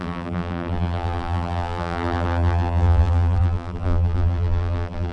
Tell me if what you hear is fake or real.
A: fake